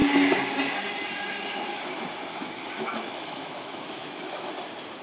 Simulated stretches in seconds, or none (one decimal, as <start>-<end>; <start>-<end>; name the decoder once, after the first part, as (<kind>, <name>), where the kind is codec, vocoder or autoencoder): 2.3-4.5 (autoencoder, DAC-VAE)